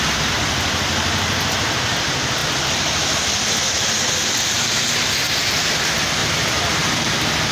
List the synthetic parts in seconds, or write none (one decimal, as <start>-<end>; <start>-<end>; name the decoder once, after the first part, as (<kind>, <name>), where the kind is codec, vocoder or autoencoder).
6.2-7.5 (vocoder, BigVGAN v2)